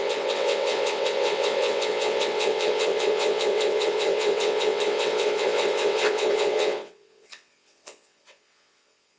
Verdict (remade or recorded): remade